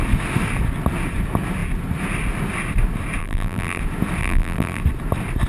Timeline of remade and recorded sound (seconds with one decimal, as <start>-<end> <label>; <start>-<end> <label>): 0.0-3.2 recorded; 3.2-3.8 remade; 3.8-4.2 recorded; 4.2-4.8 remade; 4.8-5.5 recorded